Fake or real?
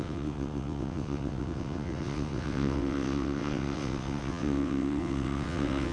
fake